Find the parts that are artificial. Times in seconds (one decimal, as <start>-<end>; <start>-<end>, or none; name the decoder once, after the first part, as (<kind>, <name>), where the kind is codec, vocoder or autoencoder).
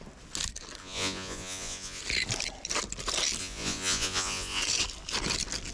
0.8-2.0 (vocoder, Vocos); 3.4-4.6